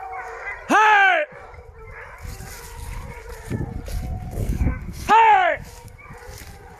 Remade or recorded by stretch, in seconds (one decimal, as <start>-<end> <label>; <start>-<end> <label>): 0.0-4.4 recorded; 4.4-5.1 remade; 5.1-6.8 recorded